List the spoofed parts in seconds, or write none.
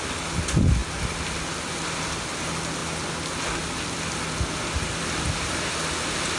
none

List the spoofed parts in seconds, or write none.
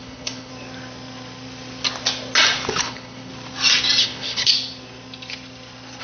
0.0-0.5 (codec, HILCodec); 2.8-3.3; 4.0-4.5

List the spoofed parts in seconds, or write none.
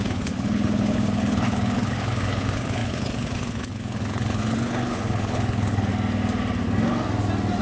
0.0-5.9 (codec, HILCodec)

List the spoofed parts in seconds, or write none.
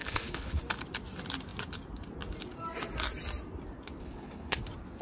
0.0-0.6 (codec, HILCodec); 4.0-4.6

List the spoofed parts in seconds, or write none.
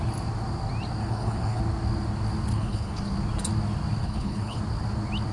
1.0-1.6 (codec, HILCodec); 2.5-3.0; 4.0-4.6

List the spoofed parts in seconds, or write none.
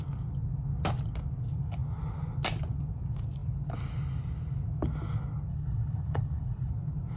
5.5-6.7 (codec, HILCodec)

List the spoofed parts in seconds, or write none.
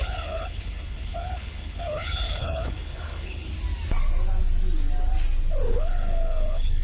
0.0-3.5 (codec, HILCodec); 5.7-6.8